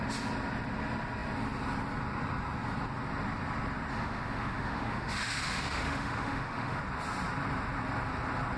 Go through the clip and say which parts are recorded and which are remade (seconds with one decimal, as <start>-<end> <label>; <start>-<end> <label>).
0.0-3.9 recorded; 3.9-6.8 remade; 6.8-8.6 recorded